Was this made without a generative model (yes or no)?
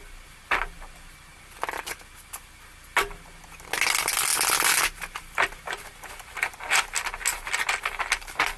yes